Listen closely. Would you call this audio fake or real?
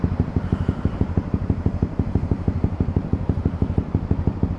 fake